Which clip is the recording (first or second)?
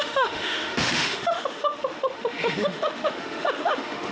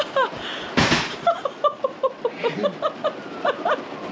second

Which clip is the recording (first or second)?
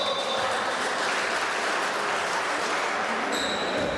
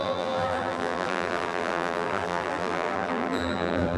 first